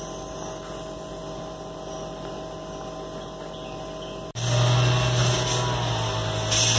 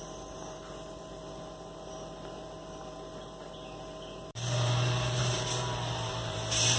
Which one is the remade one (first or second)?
second